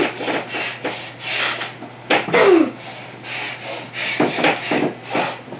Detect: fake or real real